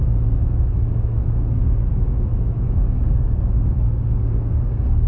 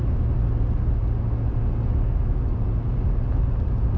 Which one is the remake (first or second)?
first